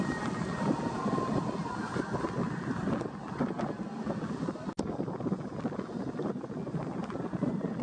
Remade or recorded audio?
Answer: recorded